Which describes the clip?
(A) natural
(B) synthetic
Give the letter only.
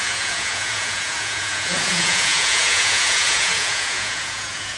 B